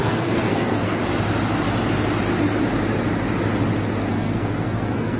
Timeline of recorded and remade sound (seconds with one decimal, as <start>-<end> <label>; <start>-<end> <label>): 0.0-1.0 remade; 1.0-4.1 recorded; 4.1-5.2 remade